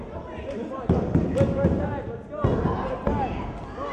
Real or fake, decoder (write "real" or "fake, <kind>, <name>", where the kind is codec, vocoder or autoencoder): real